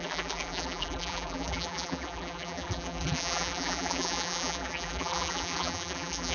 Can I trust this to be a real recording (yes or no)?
no